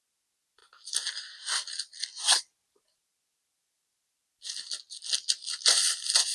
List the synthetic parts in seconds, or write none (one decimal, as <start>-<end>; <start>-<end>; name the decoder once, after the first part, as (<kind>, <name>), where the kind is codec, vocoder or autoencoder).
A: none